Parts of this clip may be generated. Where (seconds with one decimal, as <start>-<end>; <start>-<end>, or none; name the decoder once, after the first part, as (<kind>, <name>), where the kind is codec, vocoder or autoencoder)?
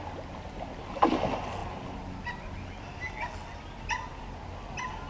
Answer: none